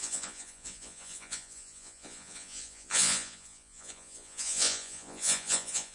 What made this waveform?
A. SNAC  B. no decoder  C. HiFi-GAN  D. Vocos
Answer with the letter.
D